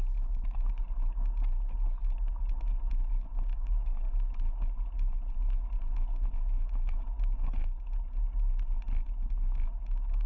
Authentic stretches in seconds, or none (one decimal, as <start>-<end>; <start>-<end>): 0.0-3.5; 4.1-10.3